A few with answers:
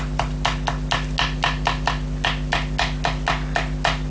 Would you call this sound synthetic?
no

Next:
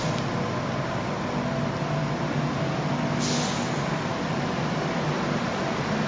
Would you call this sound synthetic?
no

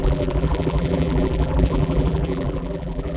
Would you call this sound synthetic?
yes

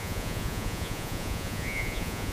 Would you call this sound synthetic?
yes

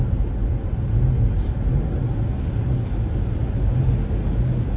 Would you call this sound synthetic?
no